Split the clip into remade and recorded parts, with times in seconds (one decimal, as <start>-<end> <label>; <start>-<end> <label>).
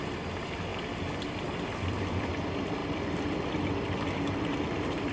0.0-0.7 recorded; 0.7-2.3 remade; 2.3-2.8 recorded; 2.8-5.1 remade